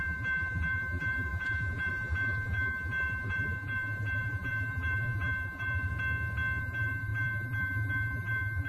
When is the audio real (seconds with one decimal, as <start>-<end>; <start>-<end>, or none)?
5.9-6.6